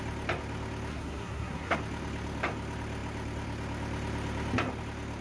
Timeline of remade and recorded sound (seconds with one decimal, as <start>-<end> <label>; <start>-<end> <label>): 0.0-0.9 recorded; 0.9-1.8 remade; 1.8-5.2 recorded